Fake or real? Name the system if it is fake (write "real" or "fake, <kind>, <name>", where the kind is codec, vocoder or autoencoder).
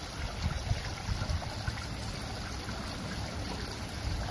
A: real